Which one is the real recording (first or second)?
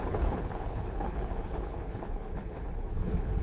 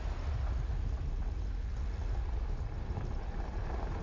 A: second